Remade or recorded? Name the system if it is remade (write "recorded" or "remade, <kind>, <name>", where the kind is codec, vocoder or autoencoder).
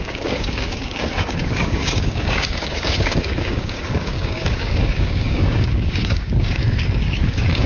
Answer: remade, codec, DAC